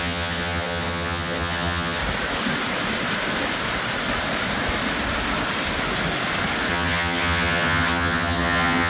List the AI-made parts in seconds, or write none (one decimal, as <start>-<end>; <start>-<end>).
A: 0.0-2.0; 6.7-8.9